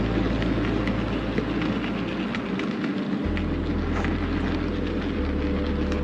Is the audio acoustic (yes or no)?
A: yes